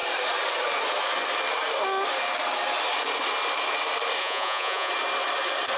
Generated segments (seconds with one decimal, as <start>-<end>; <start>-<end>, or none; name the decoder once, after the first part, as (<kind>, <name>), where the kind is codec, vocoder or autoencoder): 4.2-4.9 (vocoder, Vocos)